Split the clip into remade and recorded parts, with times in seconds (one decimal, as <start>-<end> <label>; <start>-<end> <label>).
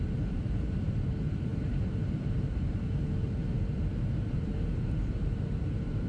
0.0-6.1 remade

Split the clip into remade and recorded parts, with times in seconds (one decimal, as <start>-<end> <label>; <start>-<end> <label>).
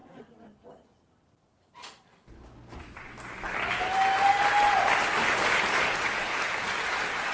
0.0-7.3 recorded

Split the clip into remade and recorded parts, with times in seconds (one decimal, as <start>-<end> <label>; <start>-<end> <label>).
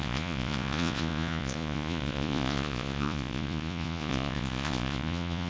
0.0-5.5 remade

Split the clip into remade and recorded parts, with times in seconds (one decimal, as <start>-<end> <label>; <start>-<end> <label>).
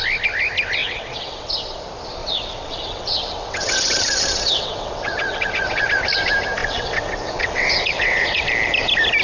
0.0-0.8 recorded; 0.8-1.5 remade; 1.5-2.2 recorded; 2.2-5.9 remade; 5.9-6.6 recorded; 6.6-8.4 remade; 8.4-9.2 recorded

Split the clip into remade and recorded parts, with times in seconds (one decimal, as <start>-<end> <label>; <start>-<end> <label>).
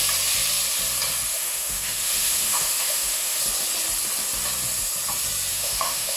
0.0-1.3 recorded; 1.3-3.4 remade; 3.4-5.5 recorded; 5.5-6.2 remade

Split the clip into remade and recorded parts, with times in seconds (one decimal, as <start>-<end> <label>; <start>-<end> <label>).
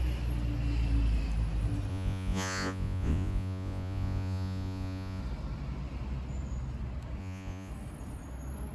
0.0-1.9 recorded; 1.9-5.2 remade; 5.2-7.2 recorded; 7.2-7.7 remade; 7.7-8.7 recorded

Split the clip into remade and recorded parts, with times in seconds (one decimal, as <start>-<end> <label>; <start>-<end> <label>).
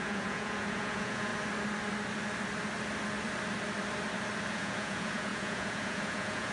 0.0-1.3 remade; 1.3-4.5 recorded; 4.5-6.5 remade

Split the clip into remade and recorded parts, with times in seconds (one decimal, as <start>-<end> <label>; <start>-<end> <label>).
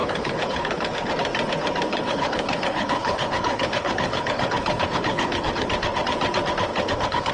0.0-1.1 remade; 1.1-1.9 recorded; 1.9-5.7 remade; 5.7-6.7 recorded; 6.7-7.3 remade